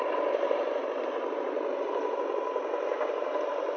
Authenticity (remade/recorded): recorded